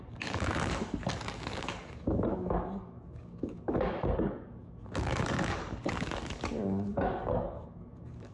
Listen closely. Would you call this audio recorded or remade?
remade